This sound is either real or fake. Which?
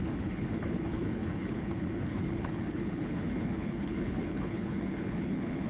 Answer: fake